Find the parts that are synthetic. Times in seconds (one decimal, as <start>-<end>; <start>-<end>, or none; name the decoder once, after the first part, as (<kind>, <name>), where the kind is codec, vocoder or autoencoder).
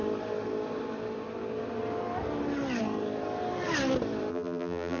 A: 4.3-5.0 (vocoder, BigVGAN v2)